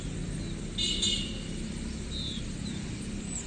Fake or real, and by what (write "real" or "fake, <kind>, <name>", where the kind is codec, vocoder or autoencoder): real